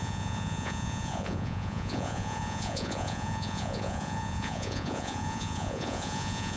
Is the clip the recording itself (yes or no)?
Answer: no